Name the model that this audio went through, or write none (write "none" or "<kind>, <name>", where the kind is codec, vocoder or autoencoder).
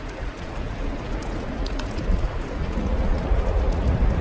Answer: vocoder, Vocos